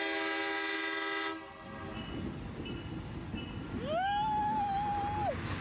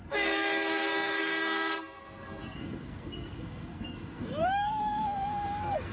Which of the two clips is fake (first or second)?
second